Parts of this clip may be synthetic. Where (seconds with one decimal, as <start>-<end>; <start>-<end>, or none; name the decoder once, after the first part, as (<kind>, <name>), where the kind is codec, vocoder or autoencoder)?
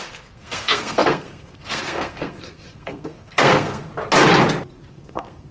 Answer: 0.0-3.9 (codec, SNAC); 4.9-5.5